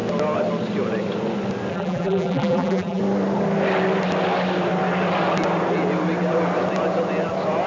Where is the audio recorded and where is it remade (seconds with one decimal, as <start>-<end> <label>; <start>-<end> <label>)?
0.0-1.7 recorded; 1.7-3.0 remade; 3.0-7.7 recorded